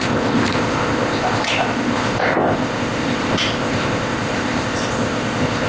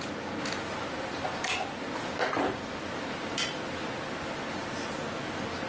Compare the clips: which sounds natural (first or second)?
second